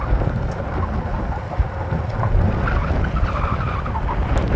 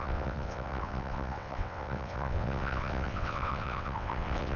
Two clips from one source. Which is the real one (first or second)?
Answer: first